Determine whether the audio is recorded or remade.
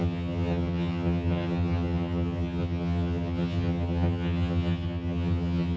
remade